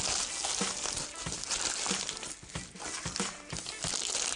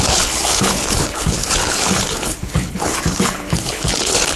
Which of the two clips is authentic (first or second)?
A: first